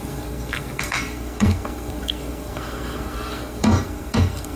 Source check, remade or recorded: remade